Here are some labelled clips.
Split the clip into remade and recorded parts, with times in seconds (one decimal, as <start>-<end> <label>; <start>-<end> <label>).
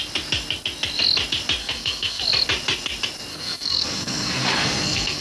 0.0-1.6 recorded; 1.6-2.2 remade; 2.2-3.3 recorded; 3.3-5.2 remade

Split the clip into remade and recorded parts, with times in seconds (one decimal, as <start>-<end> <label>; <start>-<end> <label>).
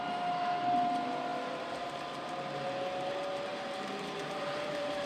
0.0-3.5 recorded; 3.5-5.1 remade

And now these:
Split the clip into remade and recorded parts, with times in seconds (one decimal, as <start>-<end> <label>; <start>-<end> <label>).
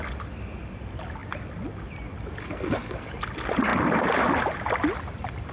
0.0-2.4 recorded; 2.4-3.1 remade; 3.1-5.5 recorded